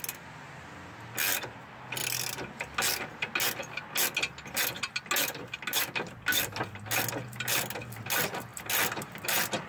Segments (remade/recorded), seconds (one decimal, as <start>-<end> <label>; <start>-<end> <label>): 0.0-9.7 recorded